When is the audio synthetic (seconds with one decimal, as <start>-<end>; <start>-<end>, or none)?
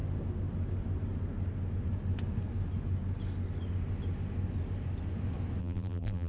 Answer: 5.6-6.3